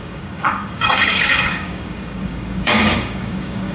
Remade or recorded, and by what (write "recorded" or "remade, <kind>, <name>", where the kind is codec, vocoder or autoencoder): remade, codec, DAC